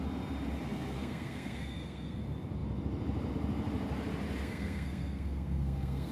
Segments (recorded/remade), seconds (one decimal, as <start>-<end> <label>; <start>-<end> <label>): 0.0-0.7 recorded; 0.7-2.2 remade; 2.2-4.4 recorded; 4.4-6.1 remade